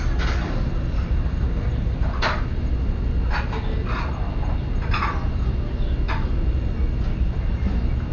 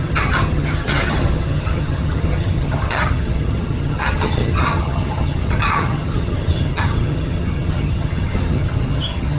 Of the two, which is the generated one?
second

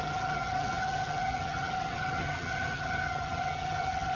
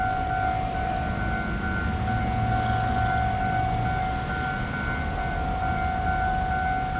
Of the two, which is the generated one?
first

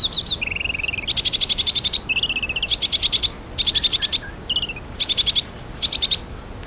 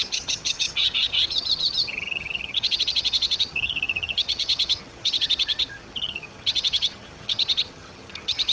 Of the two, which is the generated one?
second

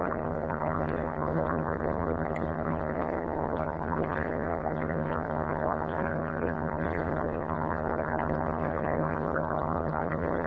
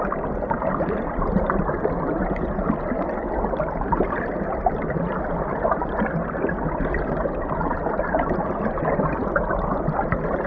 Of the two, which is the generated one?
first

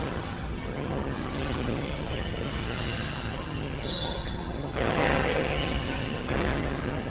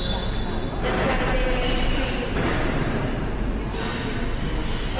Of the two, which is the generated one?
first